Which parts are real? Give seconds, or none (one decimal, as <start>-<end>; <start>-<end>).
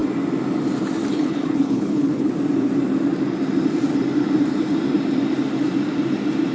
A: 0.0-1.1; 2.3-6.5